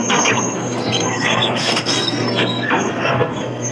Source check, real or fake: fake